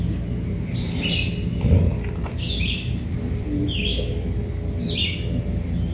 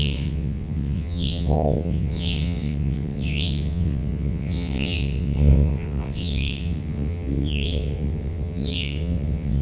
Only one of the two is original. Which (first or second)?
first